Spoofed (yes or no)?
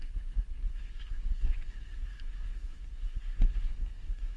yes